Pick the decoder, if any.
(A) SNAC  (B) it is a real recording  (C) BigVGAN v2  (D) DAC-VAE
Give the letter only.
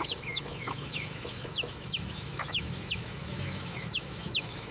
D